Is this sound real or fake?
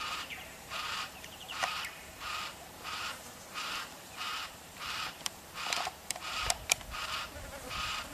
fake